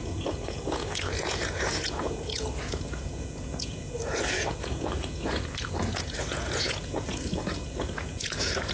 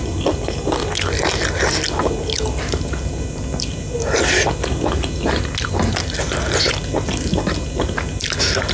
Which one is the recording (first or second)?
second